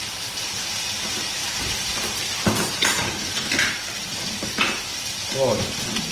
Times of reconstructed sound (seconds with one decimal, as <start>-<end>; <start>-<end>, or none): 1.4-5.1